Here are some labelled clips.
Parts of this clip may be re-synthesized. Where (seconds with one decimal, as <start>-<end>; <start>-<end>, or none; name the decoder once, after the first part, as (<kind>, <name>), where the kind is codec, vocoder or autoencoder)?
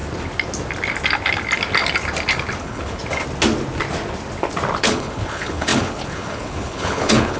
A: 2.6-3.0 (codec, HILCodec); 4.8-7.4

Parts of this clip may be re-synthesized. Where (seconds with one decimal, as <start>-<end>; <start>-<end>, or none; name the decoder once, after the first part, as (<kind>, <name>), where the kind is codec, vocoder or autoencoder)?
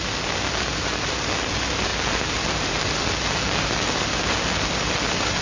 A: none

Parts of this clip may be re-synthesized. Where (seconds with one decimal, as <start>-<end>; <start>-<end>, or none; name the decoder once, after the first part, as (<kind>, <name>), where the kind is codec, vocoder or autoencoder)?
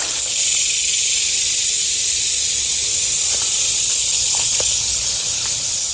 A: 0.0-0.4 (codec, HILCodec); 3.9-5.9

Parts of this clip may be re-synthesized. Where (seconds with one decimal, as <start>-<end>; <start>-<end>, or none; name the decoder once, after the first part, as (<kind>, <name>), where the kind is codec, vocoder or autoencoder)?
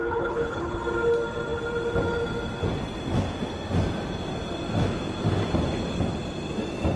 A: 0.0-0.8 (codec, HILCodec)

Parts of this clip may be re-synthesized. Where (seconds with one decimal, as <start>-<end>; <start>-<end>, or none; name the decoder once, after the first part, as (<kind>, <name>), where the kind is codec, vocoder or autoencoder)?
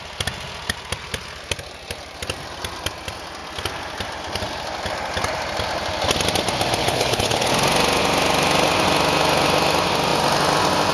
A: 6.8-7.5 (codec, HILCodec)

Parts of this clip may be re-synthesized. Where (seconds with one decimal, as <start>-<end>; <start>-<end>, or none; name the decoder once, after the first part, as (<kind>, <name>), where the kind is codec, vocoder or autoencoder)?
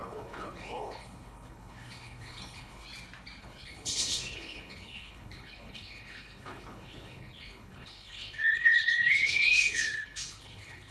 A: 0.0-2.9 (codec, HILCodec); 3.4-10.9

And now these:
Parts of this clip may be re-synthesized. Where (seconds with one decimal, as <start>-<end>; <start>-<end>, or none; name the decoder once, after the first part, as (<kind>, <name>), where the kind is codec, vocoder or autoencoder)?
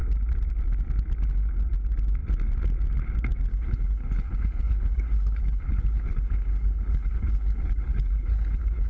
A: 3.5-8.9 (codec, HILCodec)